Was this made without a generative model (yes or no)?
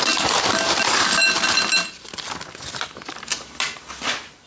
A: yes